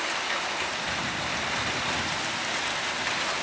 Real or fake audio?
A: real